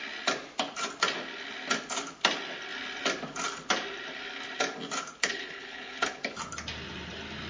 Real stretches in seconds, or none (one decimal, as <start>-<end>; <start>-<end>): 0.0-5.2; 6.2-7.5